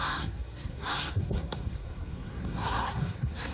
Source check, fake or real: fake